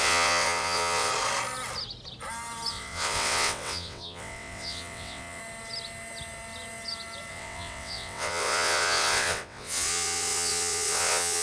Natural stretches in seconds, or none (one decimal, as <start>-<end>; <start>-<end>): 1.1-2.7; 5.4-7.3